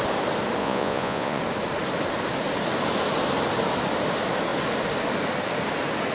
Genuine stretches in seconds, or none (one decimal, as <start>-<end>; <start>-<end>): 0.0-0.6; 1.4-6.1